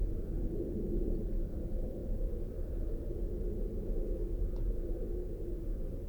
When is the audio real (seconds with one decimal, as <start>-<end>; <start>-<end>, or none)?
0.0-6.1